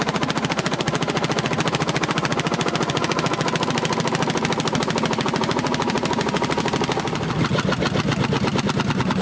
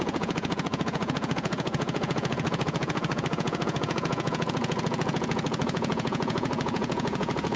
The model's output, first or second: second